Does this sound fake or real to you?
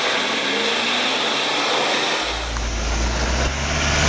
real